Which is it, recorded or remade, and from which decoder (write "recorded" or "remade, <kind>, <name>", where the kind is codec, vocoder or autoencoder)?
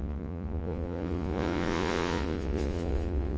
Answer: remade, vocoder, Vocos